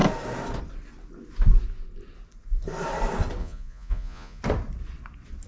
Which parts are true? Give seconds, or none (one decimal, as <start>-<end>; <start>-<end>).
0.0-3.4; 4.4-5.5